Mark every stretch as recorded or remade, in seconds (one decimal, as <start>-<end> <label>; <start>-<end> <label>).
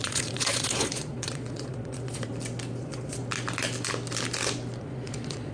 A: 0.0-2.3 remade; 2.3-2.8 recorded; 2.8-3.2 remade; 3.2-4.8 recorded; 4.8-5.5 remade